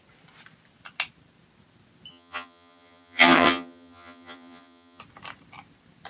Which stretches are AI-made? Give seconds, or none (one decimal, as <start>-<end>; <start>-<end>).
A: 2.1-5.0